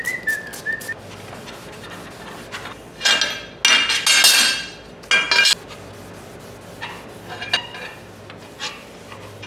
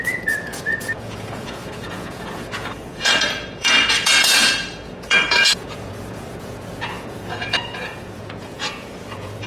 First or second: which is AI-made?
second